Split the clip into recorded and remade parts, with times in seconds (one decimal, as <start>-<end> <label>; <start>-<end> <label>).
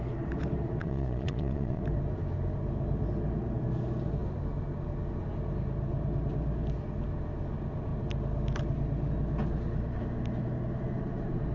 0.0-0.8 recorded; 0.8-1.8 remade; 1.8-11.5 recorded